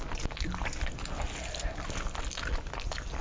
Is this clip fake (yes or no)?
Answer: no